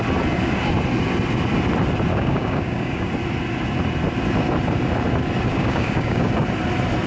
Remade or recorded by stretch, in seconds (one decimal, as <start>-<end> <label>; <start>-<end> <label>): 0.0-2.1 recorded; 2.1-3.1 remade; 3.1-5.5 recorded; 5.5-6.3 remade; 6.3-7.1 recorded